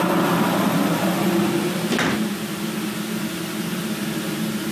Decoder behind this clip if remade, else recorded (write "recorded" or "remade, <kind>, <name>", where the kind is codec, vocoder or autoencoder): recorded